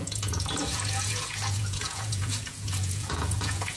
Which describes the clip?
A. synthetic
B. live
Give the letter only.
A